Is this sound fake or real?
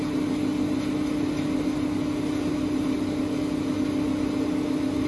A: real